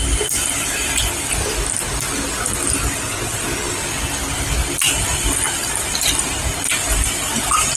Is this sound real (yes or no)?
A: yes